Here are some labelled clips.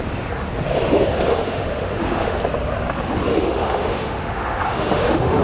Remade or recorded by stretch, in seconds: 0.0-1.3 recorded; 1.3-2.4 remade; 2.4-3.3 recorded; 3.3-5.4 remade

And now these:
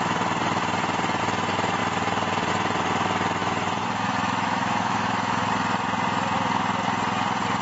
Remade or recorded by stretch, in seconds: 0.0-3.4 recorded; 3.4-5.5 remade; 5.5-7.6 recorded

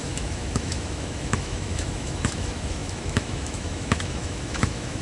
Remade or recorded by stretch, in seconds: 0.0-5.0 remade

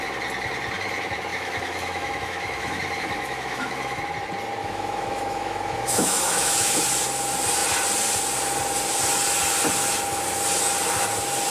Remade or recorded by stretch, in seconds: 0.0-1.3 recorded; 1.3-4.0 remade; 4.0-4.6 recorded; 4.6-6.8 remade; 6.8-11.5 recorded

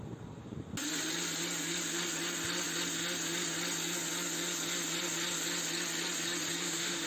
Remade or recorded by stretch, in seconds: 0.0-6.6 recorded; 6.6-7.1 remade

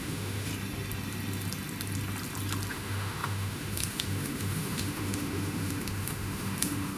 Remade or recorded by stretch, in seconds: 0.0-0.5 remade; 0.5-2.7 recorded; 2.7-7.0 remade

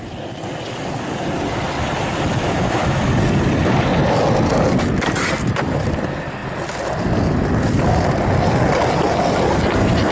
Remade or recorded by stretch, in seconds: 0.0-2.4 recorded; 2.4-3.1 remade; 3.1-10.1 recorded

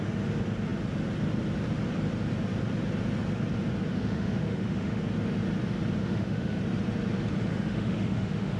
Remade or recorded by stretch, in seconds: 0.0-3.9 recorded; 3.9-5.0 remade; 5.0-6.0 recorded; 6.0-6.6 remade; 6.6-7.5 recorded; 7.5-8.6 remade